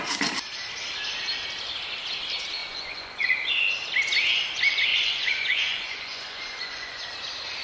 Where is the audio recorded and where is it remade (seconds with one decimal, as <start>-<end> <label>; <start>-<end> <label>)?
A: 0.0-2.6 recorded; 2.6-3.5 remade; 3.5-4.9 recorded; 4.9-7.0 remade; 7.0-7.6 recorded